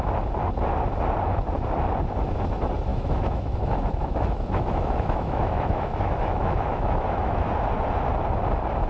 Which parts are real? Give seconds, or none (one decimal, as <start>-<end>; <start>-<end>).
0.0-2.9; 7.5-8.9